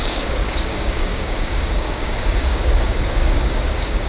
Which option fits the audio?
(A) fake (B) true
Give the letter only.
A